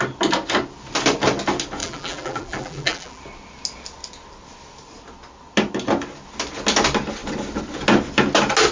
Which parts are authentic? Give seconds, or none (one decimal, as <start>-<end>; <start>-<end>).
0.0-1.8; 3.2-8.7